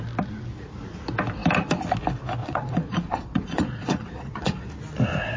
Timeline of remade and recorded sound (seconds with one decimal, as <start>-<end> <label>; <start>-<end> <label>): 0.0-2.4 recorded; 2.4-4.7 remade; 4.7-5.4 recorded